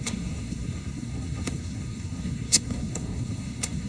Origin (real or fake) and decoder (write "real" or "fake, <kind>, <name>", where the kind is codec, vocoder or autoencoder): fake, codec, SNAC